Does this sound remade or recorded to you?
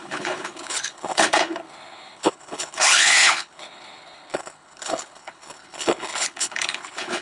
remade